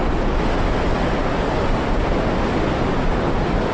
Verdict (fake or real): real